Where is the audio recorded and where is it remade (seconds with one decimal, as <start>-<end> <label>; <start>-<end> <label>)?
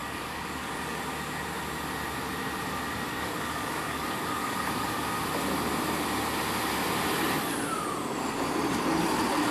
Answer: 0.0-1.0 remade; 1.0-3.1 recorded; 3.1-5.1 remade; 5.1-9.5 recorded